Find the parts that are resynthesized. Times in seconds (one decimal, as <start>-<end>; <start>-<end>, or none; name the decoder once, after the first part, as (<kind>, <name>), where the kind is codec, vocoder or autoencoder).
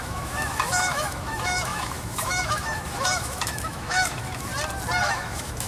0.0-4.5 (autoencoder, DAC-VAE); 5.0-5.7